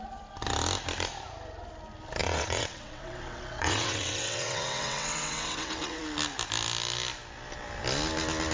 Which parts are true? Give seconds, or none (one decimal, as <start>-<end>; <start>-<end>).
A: 0.0-2.2; 6.0-8.5